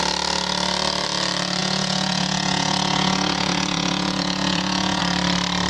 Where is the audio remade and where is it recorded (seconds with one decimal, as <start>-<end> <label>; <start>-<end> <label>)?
0.0-1.6 recorded; 1.6-5.0 remade; 5.0-5.7 recorded